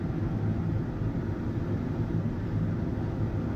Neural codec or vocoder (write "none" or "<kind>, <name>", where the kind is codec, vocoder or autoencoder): none